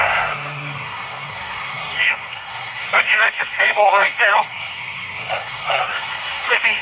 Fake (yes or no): yes